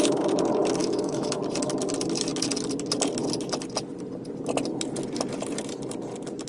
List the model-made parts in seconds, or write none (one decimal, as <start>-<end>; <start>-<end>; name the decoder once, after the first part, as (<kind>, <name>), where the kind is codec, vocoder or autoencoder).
0.8-1.4 (autoencoder, DAC-VAE)